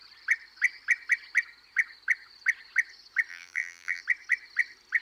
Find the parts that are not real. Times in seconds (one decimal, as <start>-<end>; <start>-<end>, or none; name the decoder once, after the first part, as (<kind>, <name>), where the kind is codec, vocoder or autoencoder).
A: 3.3-4.0 (vocoder, BigVGAN v2)